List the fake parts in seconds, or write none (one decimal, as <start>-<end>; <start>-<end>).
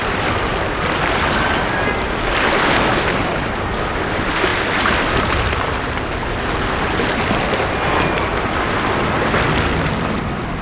none